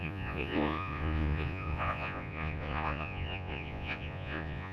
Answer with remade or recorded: remade